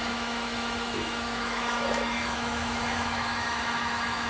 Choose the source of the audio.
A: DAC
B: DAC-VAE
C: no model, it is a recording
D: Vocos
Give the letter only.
B